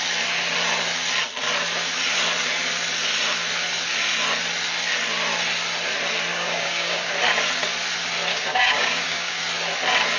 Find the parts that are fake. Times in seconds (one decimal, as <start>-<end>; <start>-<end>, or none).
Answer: 6.3-7.1; 8.3-9.4